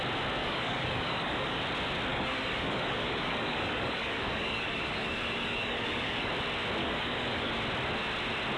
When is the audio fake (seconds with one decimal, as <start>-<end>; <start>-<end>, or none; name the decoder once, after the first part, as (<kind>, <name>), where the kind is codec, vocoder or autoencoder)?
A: 0.4-1.6 (codec, DAC); 2.1-6.3; 6.8-7.5